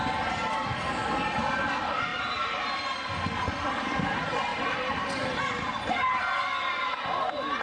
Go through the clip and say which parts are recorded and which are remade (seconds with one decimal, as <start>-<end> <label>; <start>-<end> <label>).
0.0-2.1 recorded; 2.1-2.6 remade; 2.6-4.5 recorded; 4.5-5.4 remade; 5.4-7.6 recorded

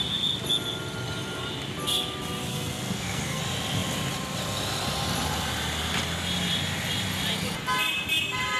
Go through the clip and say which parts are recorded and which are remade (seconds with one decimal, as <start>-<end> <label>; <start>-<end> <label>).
0.0-2.5 recorded; 2.5-3.4 remade; 3.4-8.6 recorded